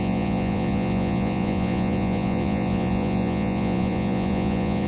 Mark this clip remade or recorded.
remade